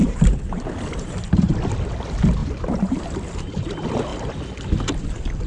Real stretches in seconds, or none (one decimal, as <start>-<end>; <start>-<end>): 1.5-2.4; 3.6-5.5